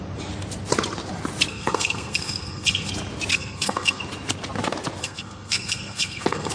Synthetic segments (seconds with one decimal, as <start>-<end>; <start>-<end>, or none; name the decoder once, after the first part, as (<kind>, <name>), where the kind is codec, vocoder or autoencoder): 1.5-2.9 (codec, SNAC); 3.3-4.0; 5.0-6.5